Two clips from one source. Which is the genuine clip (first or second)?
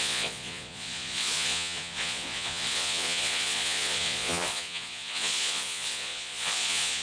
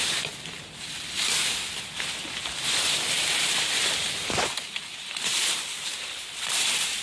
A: second